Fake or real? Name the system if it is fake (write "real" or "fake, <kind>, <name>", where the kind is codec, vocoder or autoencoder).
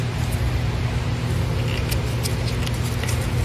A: real